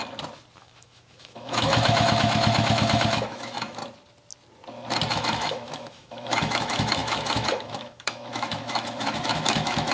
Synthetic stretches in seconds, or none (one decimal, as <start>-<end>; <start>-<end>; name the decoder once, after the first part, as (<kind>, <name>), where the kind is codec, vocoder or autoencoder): 0.6-3.8 (autoencoder, DAC-VAE); 5.1-9.9